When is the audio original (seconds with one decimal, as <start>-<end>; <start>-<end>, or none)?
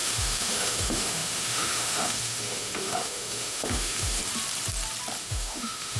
4.2-5.2